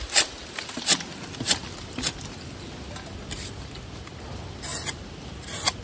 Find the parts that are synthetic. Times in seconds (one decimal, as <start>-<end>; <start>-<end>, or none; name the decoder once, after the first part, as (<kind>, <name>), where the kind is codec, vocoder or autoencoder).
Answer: none